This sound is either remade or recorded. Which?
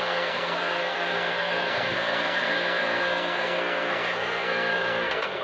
remade